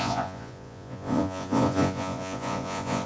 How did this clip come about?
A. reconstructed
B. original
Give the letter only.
A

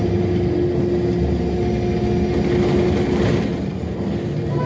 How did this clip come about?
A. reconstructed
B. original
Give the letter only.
B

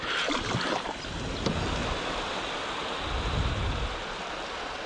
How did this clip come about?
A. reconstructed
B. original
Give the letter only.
B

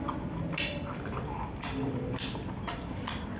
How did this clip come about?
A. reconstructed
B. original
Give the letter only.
B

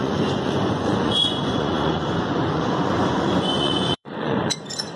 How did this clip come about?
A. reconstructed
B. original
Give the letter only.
A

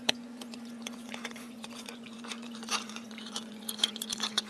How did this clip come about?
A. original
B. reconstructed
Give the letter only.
B